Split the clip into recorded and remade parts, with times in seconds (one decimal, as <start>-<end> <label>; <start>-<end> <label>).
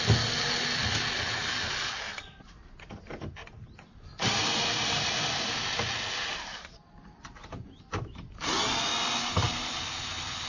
0.0-4.1 recorded; 4.1-5.2 remade; 5.2-6.5 recorded; 6.5-7.8 remade; 7.8-10.5 recorded